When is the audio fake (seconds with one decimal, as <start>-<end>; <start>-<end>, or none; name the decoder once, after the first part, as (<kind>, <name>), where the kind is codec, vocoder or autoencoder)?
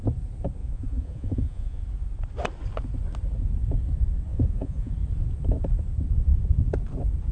0.6-1.8 (vocoder, Vocos); 4.3-4.9